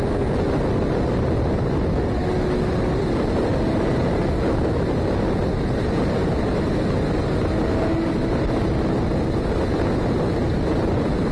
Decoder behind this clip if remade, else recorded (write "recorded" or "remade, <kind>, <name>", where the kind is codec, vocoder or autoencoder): recorded